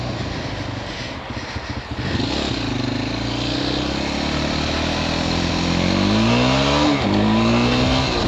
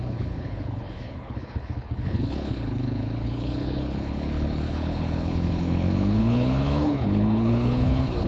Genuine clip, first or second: first